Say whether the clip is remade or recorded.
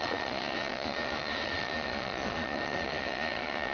remade